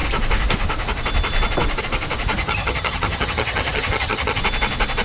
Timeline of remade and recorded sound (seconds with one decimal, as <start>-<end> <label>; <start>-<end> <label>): 0.0-2.4 recorded; 2.4-4.4 remade; 4.4-5.0 recorded